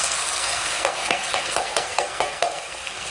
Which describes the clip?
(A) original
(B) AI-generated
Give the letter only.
B